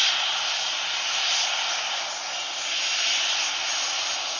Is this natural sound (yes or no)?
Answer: yes